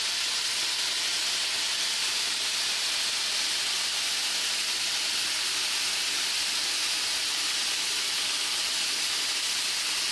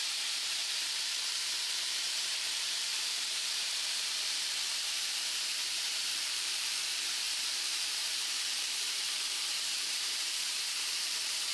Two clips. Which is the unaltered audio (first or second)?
first